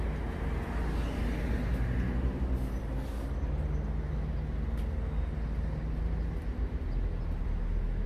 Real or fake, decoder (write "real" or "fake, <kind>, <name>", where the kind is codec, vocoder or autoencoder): real